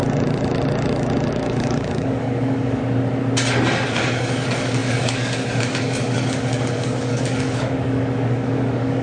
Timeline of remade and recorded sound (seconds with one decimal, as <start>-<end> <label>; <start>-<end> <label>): 0.0-1.3 recorded; 1.3-2.8 remade; 2.8-3.9 recorded; 3.9-9.0 remade